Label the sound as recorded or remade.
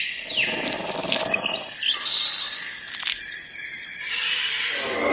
recorded